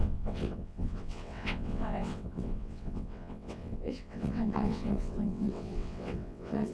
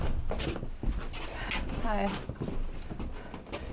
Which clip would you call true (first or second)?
second